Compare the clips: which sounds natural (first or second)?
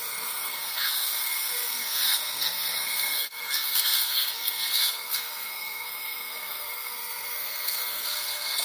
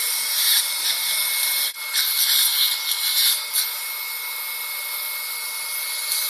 second